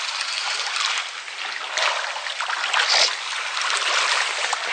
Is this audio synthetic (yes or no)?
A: no